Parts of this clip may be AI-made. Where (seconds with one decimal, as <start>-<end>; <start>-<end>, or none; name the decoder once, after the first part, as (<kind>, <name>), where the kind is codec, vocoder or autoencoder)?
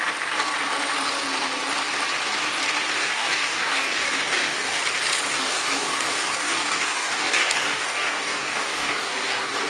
3.0-4.8 (codec, DAC); 5.3-9.7